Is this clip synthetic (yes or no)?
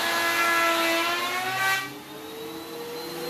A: no